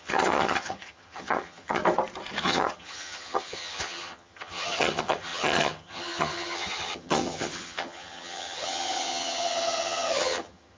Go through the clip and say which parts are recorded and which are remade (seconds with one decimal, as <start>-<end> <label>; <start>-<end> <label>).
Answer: 0.0-1.8 remade; 1.8-2.4 recorded; 2.4-10.8 remade